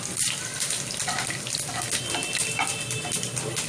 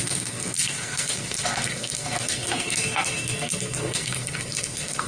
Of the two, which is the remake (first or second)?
second